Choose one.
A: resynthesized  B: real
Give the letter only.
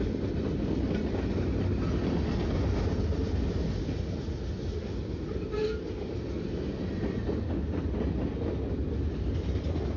B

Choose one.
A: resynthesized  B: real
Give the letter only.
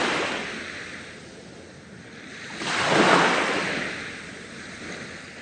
B